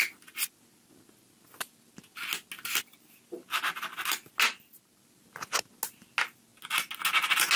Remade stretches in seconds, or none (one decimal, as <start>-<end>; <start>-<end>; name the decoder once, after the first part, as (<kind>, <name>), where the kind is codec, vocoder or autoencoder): none